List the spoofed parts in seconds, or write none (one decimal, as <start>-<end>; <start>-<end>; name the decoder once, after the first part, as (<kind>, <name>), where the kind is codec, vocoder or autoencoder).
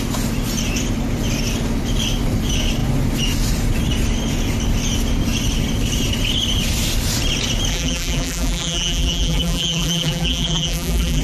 7.7-11.2 (vocoder, BigVGAN v2)